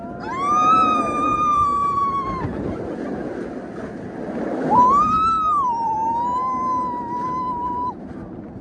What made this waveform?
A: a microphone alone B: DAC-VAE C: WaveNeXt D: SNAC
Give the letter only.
A